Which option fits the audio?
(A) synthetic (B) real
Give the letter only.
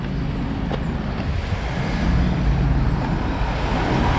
B